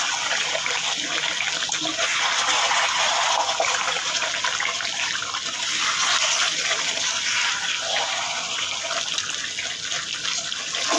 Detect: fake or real real